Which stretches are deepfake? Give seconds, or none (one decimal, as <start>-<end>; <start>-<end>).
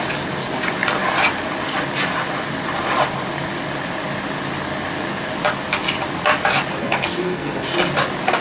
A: 6.8-7.7